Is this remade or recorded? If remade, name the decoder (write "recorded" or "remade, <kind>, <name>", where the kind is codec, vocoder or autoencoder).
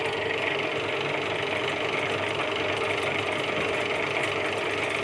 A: recorded